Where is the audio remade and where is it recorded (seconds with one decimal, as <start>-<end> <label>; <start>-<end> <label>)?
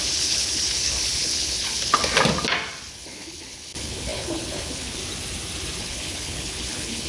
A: 0.0-2.0 remade; 2.0-2.9 recorded; 2.9-5.0 remade; 5.0-5.8 recorded; 5.8-7.1 remade